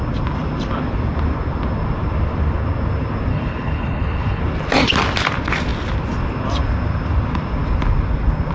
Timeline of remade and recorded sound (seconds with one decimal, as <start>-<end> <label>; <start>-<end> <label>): 0.0-3.3 recorded; 3.3-4.4 remade; 4.4-8.5 recorded